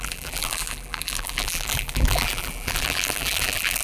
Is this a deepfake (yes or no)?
yes